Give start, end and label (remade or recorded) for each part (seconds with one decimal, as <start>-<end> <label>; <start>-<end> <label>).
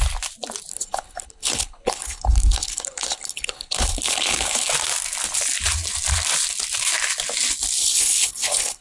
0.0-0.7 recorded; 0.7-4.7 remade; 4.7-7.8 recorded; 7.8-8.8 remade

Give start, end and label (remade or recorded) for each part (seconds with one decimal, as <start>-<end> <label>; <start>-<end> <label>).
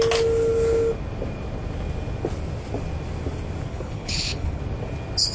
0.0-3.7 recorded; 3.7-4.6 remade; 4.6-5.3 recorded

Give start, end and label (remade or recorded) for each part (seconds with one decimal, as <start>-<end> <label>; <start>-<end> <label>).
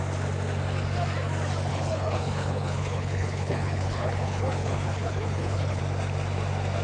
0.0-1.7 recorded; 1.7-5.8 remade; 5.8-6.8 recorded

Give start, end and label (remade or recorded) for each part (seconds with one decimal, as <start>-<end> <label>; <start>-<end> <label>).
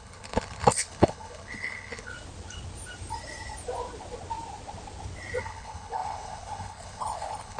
0.0-2.1 remade; 2.1-5.4 recorded; 5.4-7.6 remade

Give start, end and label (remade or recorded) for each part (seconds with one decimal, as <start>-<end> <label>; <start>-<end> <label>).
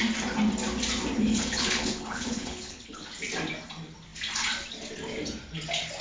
0.0-1.3 recorded; 1.3-3.1 remade; 3.1-6.0 recorded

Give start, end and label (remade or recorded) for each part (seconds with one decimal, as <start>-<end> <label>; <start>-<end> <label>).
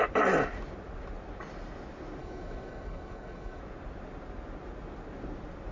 0.0-2.2 recorded; 2.2-3.6 remade; 3.6-5.7 recorded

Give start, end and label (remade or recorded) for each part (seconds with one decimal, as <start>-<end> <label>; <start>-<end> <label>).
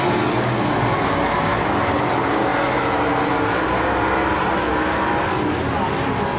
0.0-6.4 recorded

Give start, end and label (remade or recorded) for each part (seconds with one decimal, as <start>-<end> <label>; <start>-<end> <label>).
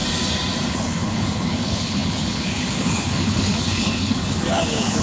0.0-0.7 recorded; 0.7-5.0 remade